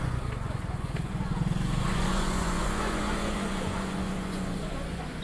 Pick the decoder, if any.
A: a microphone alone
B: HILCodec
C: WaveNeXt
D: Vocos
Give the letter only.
D